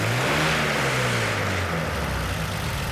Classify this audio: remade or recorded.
recorded